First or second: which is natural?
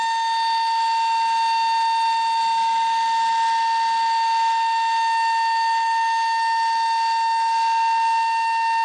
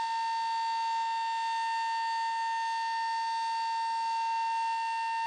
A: second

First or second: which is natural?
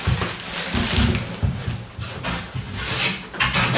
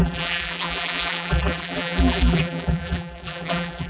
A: first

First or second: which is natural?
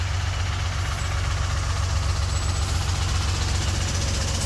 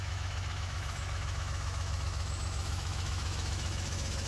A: first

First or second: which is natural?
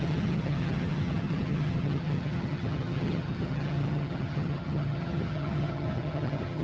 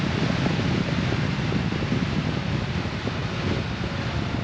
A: second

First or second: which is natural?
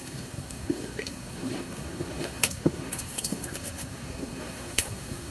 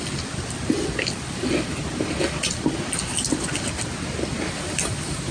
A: second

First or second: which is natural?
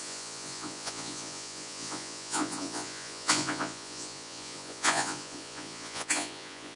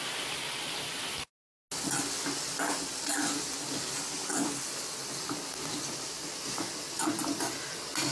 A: second